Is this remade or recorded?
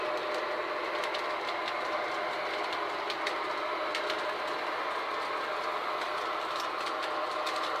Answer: recorded